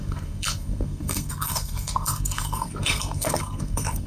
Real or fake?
fake